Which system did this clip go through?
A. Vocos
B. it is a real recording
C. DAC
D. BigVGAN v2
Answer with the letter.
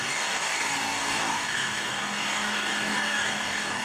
C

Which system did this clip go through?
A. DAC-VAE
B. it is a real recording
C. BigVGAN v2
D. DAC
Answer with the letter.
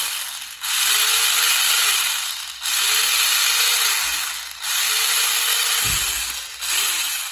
B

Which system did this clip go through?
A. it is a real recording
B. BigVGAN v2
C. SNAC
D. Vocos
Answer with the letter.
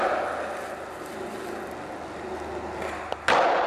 A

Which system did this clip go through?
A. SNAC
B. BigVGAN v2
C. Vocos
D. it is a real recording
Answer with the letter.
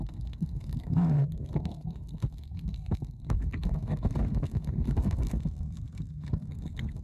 A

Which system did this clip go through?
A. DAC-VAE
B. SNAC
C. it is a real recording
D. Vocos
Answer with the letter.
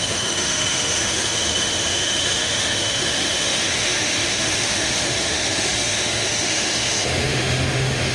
A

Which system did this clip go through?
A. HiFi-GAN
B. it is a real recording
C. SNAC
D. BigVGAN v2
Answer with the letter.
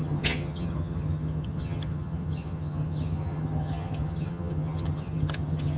A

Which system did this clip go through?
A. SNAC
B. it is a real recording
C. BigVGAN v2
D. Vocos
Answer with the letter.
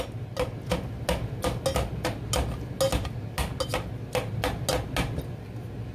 B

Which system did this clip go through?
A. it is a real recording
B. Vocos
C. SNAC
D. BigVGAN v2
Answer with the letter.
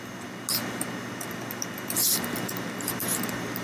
A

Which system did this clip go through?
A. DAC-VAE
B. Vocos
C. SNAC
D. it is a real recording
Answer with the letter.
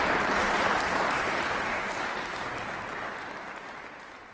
D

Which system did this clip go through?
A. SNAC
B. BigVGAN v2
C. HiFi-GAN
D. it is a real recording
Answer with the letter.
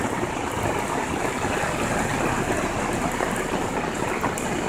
D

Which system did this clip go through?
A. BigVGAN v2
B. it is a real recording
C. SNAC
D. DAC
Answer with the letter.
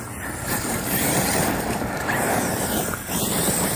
B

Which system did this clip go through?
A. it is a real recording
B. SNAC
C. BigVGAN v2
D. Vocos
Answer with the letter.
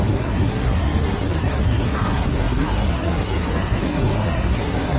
B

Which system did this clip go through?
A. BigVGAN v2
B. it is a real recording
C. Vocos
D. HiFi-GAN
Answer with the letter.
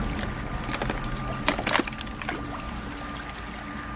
B